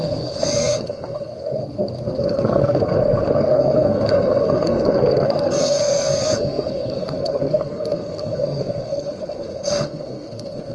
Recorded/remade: remade